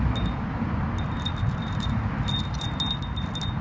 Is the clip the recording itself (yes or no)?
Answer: yes